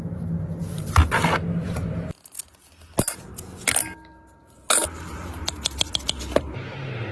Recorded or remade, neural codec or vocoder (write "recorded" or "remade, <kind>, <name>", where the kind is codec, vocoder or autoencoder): recorded